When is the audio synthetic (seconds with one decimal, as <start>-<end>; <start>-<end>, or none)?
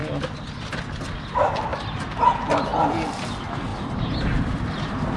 3.7-5.2